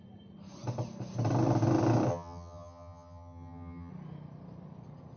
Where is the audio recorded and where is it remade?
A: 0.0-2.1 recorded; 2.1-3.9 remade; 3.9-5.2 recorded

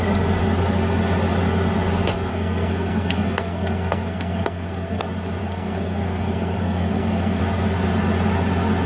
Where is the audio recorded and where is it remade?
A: 0.0-2.3 recorded; 2.3-5.0 remade; 5.0-5.4 recorded; 5.4-7.4 remade; 7.4-8.9 recorded

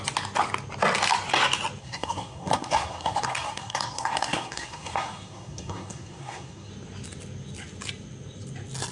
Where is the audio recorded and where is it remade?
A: 0.0-1.8 recorded; 1.8-6.7 remade; 6.7-8.9 recorded

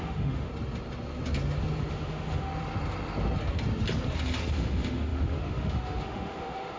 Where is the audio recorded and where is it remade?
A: 0.0-0.5 remade; 0.5-1.9 recorded; 1.9-2.5 remade; 2.5-4.5 recorded; 4.5-6.8 remade

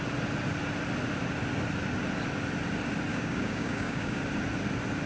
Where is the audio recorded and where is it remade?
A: 0.0-3.1 recorded; 3.1-4.2 remade; 4.2-5.1 recorded

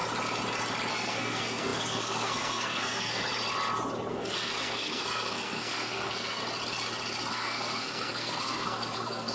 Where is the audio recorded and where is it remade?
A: 0.0-0.9 recorded; 0.9-3.2 remade; 3.2-4.1 recorded; 4.1-6.4 remade; 6.4-7.3 recorded; 7.3-9.3 remade